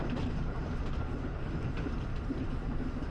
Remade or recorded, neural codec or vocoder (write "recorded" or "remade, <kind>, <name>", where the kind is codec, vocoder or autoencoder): recorded